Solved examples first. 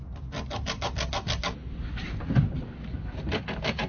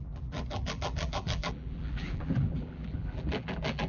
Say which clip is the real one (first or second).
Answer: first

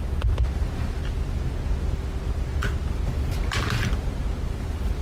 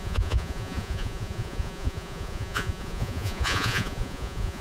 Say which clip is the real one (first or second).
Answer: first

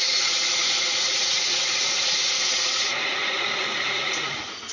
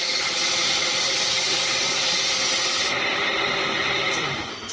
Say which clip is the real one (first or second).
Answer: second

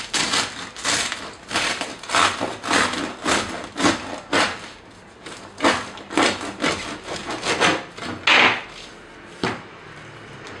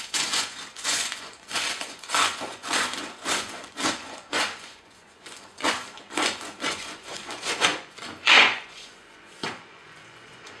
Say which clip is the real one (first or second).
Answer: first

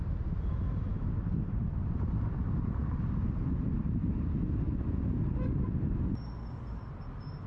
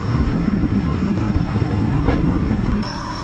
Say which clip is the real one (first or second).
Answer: first